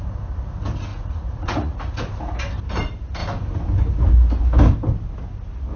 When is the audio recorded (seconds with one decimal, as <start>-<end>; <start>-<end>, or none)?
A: 0.0-0.9; 2.0-5.8